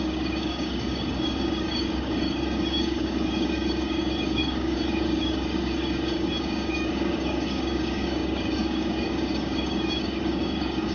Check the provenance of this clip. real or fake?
fake